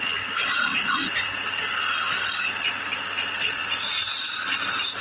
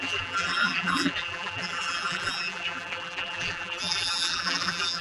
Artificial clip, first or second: second